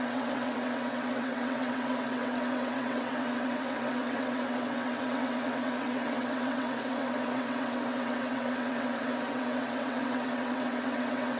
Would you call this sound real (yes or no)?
no